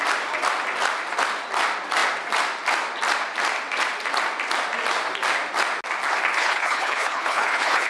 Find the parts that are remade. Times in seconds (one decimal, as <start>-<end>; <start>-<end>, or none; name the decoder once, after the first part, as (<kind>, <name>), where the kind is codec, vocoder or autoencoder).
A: 6.4-7.9 (codec, HILCodec)